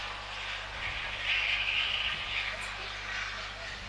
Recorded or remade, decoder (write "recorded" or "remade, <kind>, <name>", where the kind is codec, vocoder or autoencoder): recorded